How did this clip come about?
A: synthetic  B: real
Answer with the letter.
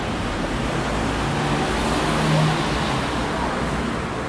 B